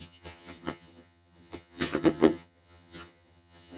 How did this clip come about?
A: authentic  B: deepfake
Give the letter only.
B